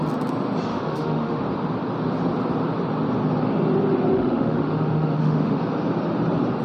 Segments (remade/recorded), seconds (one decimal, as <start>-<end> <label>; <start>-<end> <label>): 0.0-0.7 recorded; 0.7-1.4 remade; 1.4-4.1 recorded; 4.1-5.6 remade; 5.6-6.6 recorded